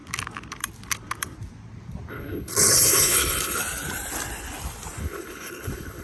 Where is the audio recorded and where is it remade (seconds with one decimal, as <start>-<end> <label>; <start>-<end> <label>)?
0.0-2.1 recorded; 2.1-3.6 remade; 3.6-5.0 recorded; 5.0-6.0 remade